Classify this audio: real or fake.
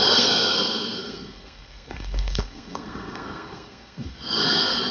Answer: fake